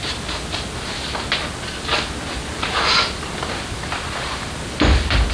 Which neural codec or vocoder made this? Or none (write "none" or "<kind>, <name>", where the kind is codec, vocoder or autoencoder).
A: none